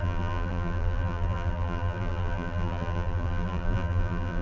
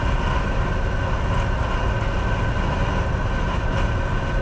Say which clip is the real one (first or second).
second